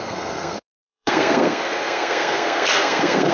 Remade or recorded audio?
remade